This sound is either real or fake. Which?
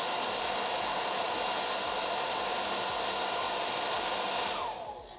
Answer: real